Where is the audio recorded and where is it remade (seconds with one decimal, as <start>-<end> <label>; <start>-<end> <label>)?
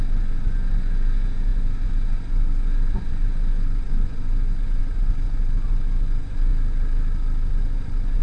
0.0-6.5 remade; 6.5-7.5 recorded; 7.5-8.2 remade